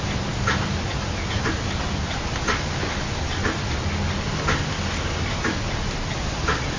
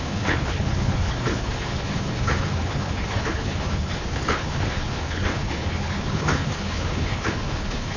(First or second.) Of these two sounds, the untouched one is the first